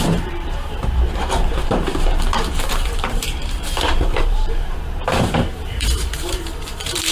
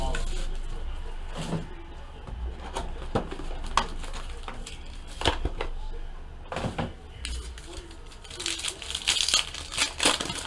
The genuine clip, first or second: second